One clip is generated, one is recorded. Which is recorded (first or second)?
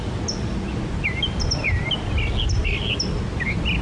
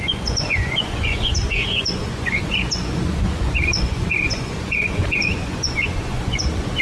first